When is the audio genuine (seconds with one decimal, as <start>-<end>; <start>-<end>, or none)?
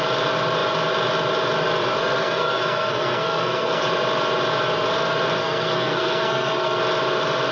0.0-2.2; 3.8-5.4; 6.8-7.5